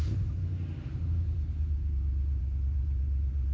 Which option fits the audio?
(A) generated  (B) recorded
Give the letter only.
A